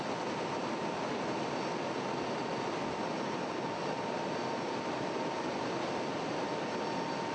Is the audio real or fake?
real